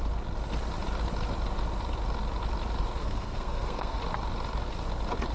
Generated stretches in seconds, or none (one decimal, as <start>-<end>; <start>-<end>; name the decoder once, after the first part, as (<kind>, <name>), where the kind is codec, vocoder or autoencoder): 3.0-4.0 (codec, SNAC)